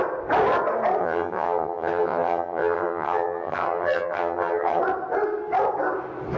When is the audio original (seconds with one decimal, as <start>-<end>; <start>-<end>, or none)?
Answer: 0.0-1.0; 4.8-6.4